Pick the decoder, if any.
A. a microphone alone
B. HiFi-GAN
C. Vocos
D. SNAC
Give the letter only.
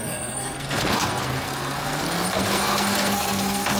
D